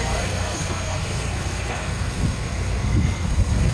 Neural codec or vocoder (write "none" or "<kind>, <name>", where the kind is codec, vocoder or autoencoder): codec, SNAC